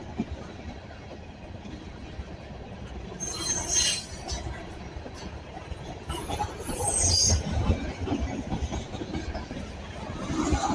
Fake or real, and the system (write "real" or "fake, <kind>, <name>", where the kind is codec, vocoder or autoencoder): real